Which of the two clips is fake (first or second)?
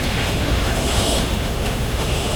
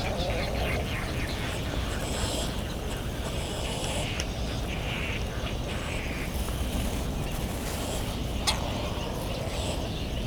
first